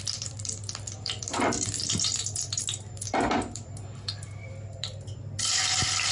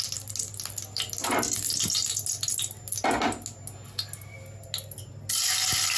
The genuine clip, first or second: second